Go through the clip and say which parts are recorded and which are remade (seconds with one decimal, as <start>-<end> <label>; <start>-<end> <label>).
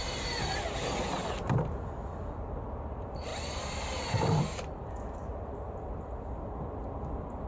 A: 0.0-7.5 remade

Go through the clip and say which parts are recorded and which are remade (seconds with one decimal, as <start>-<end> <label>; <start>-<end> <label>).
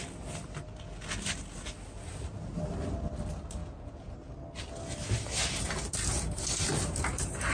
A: 0.0-3.6 recorded; 3.6-4.1 remade; 4.1-7.5 recorded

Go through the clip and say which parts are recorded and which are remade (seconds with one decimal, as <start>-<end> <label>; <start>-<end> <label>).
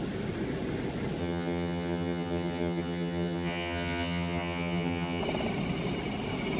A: 0.0-1.2 recorded; 1.2-5.2 remade; 5.2-6.6 recorded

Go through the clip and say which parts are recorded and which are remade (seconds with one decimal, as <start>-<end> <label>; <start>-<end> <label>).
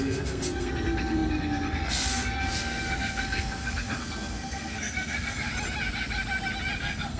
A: 0.0-5.5 remade; 5.5-6.8 recorded; 6.8-7.2 remade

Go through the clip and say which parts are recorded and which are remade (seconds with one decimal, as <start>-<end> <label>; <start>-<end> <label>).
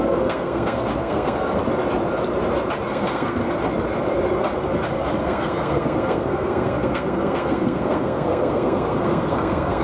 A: 0.0-1.6 remade; 1.6-2.9 recorded; 2.9-3.4 remade; 3.4-5.2 recorded; 5.2-9.8 remade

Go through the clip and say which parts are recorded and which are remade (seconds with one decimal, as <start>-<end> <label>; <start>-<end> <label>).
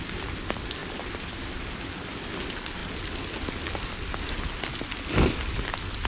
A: 0.0-0.8 remade; 0.8-1.8 recorded; 1.8-2.8 remade; 2.8-6.1 recorded